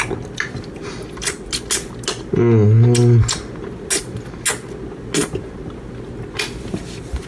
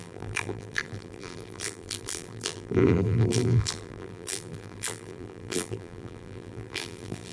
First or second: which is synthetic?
second